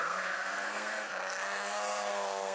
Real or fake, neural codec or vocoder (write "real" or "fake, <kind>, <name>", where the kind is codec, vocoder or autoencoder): fake, codec, SNAC